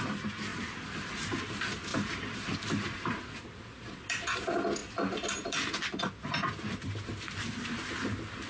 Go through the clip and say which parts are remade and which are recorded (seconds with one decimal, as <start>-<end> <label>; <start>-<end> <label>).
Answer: 0.0-0.5 recorded; 0.5-1.4 remade; 1.4-1.9 recorded; 1.9-3.2 remade; 3.2-8.5 recorded